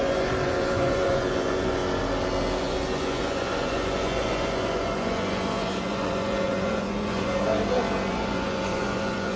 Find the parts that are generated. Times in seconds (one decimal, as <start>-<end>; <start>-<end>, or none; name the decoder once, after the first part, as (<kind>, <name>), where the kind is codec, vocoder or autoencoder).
0.0-1.8 (vocoder, Vocos); 2.6-7.5; 8.1-9.4